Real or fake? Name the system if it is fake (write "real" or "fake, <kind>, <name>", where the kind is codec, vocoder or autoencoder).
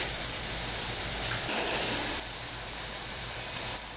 fake, vocoder, BigVGAN v2